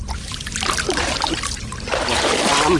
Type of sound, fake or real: real